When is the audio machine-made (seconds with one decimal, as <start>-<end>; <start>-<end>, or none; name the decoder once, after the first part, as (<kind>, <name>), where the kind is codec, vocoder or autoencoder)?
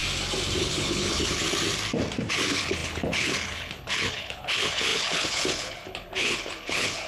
0.6-1.4 (codec, HILCodec); 2.3-7.1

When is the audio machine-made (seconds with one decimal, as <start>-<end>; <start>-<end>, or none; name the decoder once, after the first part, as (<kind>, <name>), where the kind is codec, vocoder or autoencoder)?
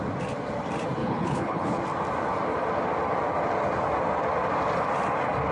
1.0-1.8 (codec, HILCodec)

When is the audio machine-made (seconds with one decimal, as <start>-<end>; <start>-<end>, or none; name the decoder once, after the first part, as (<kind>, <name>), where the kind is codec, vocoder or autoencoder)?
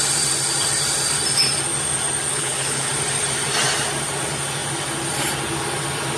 2.3-2.9 (codec, HILCodec)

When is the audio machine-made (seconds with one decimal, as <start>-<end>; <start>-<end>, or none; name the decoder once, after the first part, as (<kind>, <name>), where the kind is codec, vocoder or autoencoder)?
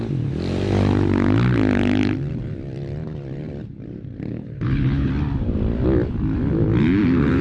4.3-5.1 (codec, HILCodec)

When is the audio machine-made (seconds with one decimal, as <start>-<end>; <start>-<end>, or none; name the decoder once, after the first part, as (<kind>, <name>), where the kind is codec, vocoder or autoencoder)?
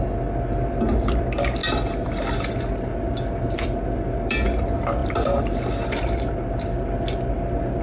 none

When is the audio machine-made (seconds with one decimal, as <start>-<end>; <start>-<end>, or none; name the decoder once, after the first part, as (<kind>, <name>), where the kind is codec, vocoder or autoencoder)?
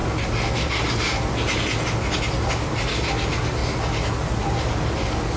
none